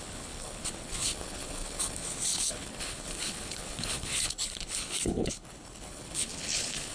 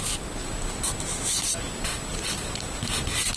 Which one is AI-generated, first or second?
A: first